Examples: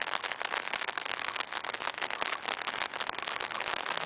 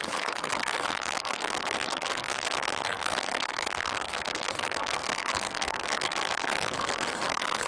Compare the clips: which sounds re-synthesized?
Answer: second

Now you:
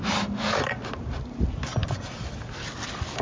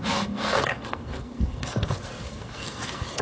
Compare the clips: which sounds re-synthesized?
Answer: second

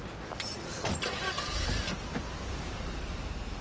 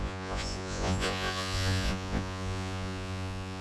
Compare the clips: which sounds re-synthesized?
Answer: second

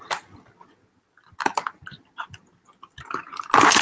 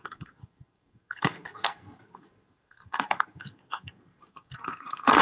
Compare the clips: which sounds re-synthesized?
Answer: second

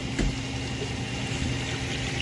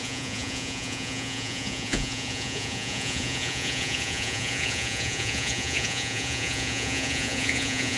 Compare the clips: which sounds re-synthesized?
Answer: second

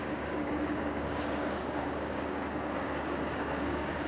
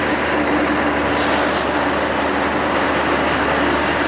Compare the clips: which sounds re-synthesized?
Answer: first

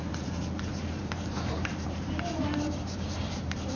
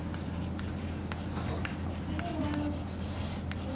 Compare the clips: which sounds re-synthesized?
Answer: first